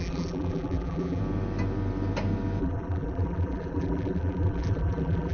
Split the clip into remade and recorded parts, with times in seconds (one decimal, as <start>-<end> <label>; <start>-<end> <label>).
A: 0.0-1.2 remade; 1.2-2.6 recorded; 2.6-5.3 remade

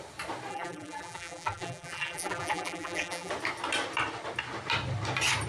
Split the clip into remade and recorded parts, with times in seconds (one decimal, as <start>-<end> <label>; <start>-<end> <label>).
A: 0.0-0.5 recorded; 0.5-3.3 remade; 3.3-5.5 recorded

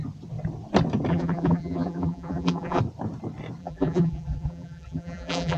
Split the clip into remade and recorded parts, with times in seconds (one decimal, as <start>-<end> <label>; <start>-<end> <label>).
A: 0.0-1.1 recorded; 1.1-2.8 remade; 2.8-3.6 recorded; 3.6-5.6 remade

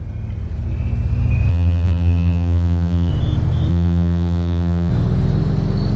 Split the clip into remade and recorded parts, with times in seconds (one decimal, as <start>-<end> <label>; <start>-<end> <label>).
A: 0.0-1.5 recorded; 1.5-3.1 remade; 3.1-3.7 recorded; 3.7-4.9 remade; 4.9-6.0 recorded

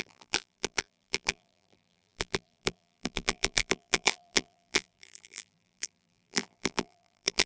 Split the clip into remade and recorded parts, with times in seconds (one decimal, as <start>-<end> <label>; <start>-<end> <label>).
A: 0.0-7.5 remade